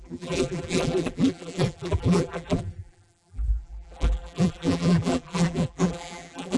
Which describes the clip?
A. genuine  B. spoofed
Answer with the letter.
B